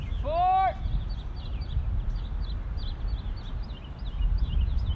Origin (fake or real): real